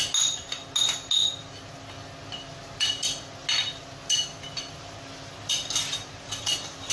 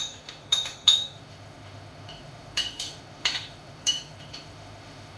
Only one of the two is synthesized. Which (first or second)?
second